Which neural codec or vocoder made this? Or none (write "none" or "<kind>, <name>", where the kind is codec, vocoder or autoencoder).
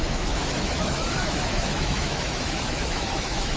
autoencoder, DAC-VAE